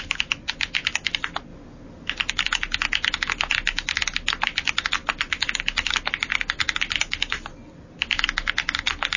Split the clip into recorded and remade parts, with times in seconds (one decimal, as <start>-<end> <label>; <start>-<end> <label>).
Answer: 0.0-9.2 recorded